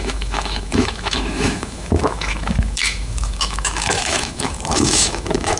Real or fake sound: fake